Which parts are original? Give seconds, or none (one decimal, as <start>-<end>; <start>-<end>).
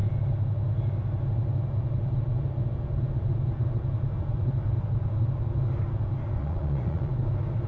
0.0-6.4; 7.1-7.7